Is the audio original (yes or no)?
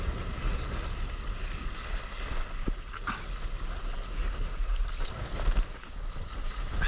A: yes